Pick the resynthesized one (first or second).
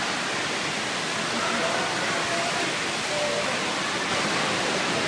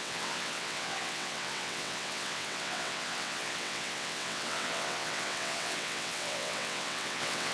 second